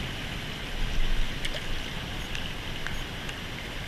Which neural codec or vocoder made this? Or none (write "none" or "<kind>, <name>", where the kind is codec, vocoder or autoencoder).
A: none